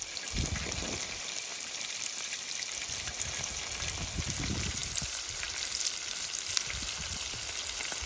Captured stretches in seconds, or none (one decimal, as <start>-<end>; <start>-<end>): 0.0-1.5; 2.4-4.8